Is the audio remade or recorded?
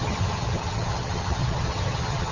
remade